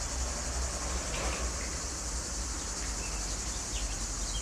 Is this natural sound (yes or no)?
yes